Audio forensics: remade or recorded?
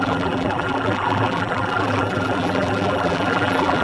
remade